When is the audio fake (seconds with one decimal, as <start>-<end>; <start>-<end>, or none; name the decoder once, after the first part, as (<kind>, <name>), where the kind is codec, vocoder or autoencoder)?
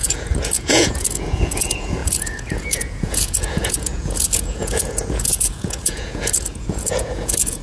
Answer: 0.0-7.6 (vocoder, Vocos)